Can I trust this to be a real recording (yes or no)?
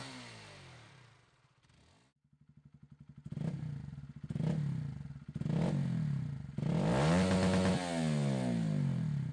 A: yes